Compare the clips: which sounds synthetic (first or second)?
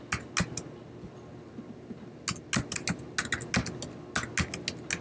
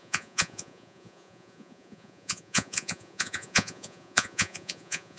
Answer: second